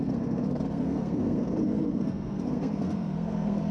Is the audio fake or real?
fake